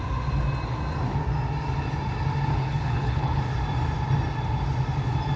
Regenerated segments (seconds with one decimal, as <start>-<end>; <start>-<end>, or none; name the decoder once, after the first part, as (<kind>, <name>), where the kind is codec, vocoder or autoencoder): 2.5-3.4 (codec, HILCodec)